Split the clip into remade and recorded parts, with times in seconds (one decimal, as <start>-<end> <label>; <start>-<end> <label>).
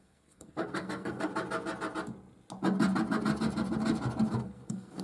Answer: 0.0-1.3 remade; 1.3-4.3 recorded; 4.3-5.0 remade